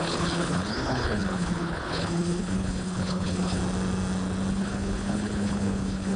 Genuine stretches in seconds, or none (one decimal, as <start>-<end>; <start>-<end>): 3.6-4.5